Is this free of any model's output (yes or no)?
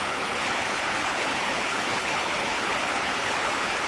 no